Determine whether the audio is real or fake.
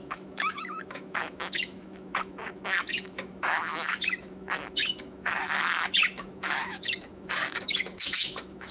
fake